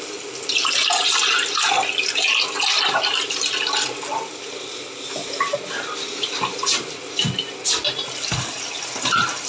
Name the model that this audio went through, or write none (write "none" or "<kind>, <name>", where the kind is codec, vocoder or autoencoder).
none